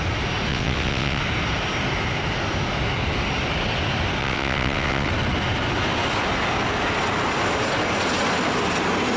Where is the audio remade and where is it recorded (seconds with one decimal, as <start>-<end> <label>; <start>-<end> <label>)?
0.0-0.5 recorded; 0.5-1.2 remade; 1.2-4.2 recorded; 4.2-5.1 remade; 5.1-9.2 recorded